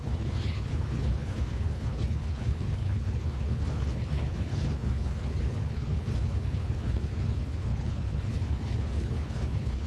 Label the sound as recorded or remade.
remade